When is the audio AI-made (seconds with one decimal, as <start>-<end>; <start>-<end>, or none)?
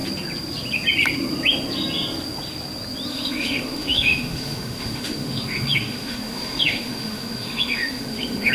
3.1-8.5